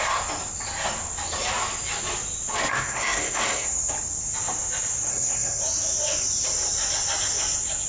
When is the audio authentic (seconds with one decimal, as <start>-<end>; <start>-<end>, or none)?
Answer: 0.0-2.7; 3.9-5.1; 5.6-7.9